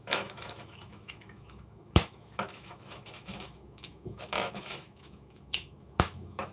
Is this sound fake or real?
fake